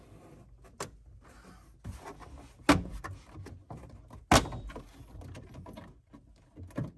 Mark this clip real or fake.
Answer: real